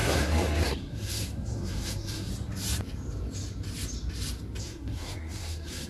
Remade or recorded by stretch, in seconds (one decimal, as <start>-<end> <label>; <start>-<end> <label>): 0.0-2.3 remade; 2.3-4.6 recorded; 4.6-5.9 remade

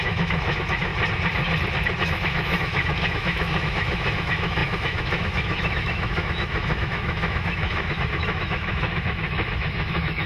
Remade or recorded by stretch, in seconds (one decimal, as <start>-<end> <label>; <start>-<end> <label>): 0.0-0.9 remade; 0.9-2.0 recorded; 2.0-10.3 remade

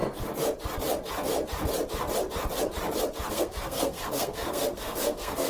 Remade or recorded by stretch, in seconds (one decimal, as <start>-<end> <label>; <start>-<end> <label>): 0.0-3.3 recorded; 3.3-5.5 remade

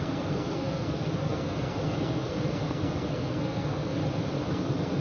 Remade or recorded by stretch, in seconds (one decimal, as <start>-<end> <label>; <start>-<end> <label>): 0.0-4.0 remade; 4.0-4.5 recorded; 4.5-5.0 remade

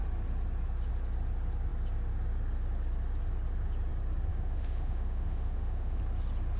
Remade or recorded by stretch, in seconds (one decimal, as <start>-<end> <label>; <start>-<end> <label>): 0.0-4.3 recorded; 4.3-6.0 remade; 6.0-6.6 recorded

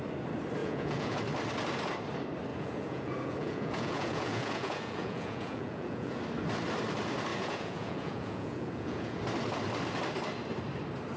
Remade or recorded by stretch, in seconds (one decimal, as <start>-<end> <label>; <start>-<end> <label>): 0.0-0.6 recorded; 0.6-1.2 remade; 1.2-2.5 recorded; 2.5-6.2 remade; 6.2-7.3 recorded; 7.3-9.2 remade; 9.2-11.2 recorded

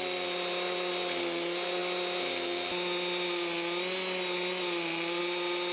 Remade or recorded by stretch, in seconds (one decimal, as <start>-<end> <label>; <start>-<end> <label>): 0.0-5.7 recorded